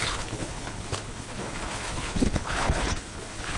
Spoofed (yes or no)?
yes